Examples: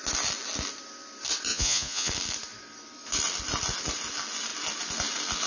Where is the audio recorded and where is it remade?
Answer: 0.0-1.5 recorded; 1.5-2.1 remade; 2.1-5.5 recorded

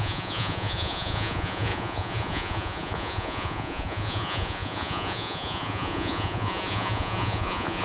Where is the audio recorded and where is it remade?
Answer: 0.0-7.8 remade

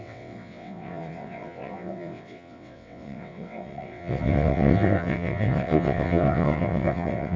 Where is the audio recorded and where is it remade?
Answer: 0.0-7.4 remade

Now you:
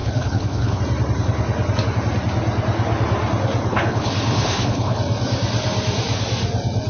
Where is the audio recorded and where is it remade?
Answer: 0.0-0.8 remade; 0.8-3.7 recorded; 3.7-5.0 remade; 5.0-6.9 recorded